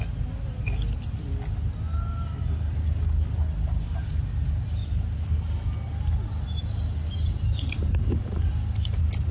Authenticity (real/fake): real